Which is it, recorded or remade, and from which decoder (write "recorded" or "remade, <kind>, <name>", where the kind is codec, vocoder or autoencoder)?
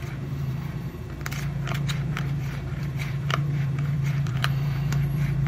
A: remade, vocoder, BigVGAN v2